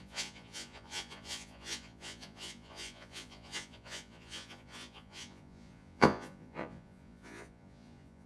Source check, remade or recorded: remade